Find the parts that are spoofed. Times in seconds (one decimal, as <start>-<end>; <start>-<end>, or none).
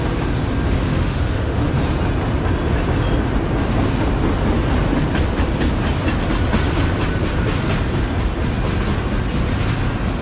0.9-1.7